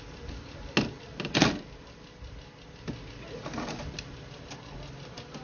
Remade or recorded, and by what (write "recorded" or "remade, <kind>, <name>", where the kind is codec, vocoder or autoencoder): recorded